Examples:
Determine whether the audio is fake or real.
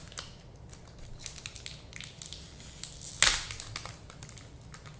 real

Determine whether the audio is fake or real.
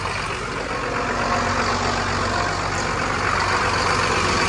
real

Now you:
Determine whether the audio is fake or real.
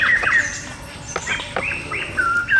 real